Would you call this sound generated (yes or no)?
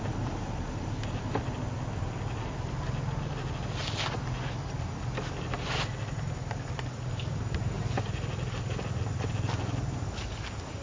no